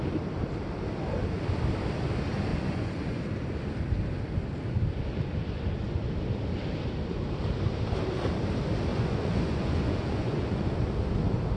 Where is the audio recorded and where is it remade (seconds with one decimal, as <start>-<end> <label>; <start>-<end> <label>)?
0.0-2.5 recorded; 2.5-3.2 remade; 3.2-8.9 recorded; 8.9-10.7 remade; 10.7-11.6 recorded